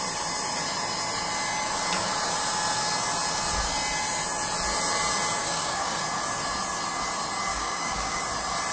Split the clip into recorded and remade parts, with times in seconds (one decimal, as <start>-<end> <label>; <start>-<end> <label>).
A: 0.0-5.4 recorded; 5.4-6.0 remade; 6.0-7.5 recorded; 7.5-8.2 remade; 8.2-8.7 recorded